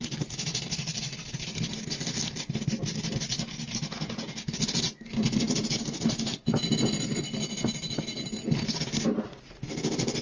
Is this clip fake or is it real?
real